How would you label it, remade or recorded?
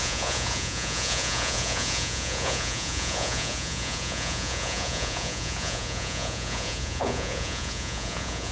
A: remade